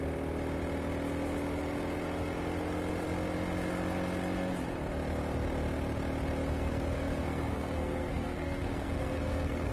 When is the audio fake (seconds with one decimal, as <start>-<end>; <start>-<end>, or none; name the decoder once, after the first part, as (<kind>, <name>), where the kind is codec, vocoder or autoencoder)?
6.5-9.7 (codec, SNAC)